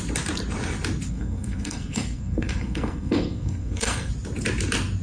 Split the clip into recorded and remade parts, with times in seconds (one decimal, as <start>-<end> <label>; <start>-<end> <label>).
0.0-1.1 recorded; 1.1-4.1 remade; 4.1-5.0 recorded

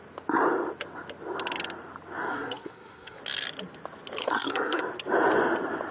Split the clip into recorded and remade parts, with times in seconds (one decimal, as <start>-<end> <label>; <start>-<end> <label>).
0.0-2.3 recorded; 2.3-3.2 remade; 3.2-4.2 recorded; 4.2-4.8 remade; 4.8-5.9 recorded

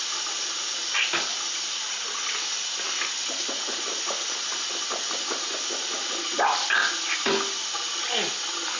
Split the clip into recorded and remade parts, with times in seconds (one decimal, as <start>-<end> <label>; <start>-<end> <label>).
0.0-8.8 recorded

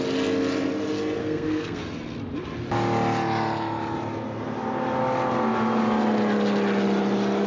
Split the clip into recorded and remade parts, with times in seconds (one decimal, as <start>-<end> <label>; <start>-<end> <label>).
0.0-1.2 recorded; 1.2-1.8 remade; 1.8-7.5 recorded

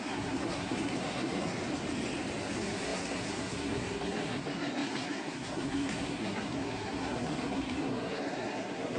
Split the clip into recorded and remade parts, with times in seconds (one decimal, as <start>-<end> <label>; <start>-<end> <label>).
0.0-1.6 remade; 1.6-2.4 recorded; 2.4-9.0 remade

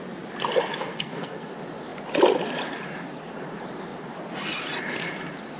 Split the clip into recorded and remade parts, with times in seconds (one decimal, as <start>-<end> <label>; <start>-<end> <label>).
0.0-0.7 recorded; 0.7-1.5 remade; 1.5-5.6 recorded